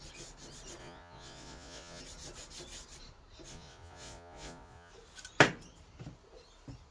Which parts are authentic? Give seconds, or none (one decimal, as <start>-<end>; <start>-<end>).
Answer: 0.0-0.8; 2.0-3.5; 4.9-6.9